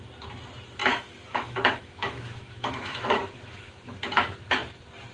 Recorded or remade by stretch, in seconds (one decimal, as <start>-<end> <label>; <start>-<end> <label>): 0.0-0.8 recorded; 0.8-3.9 remade; 3.9-5.1 recorded